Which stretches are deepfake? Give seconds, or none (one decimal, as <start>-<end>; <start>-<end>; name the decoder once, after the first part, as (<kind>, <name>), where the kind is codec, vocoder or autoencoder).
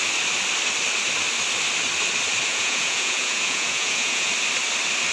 2.5-4.3 (vocoder, Vocos)